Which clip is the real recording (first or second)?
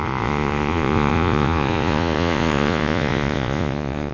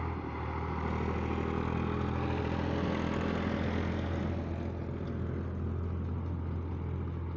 second